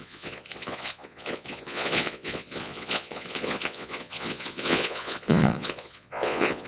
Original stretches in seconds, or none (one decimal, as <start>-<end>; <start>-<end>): none